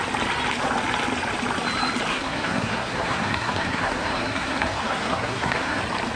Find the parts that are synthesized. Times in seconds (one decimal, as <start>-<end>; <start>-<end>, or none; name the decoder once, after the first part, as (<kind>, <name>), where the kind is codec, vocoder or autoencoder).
2.1-5.8 (codec, SNAC)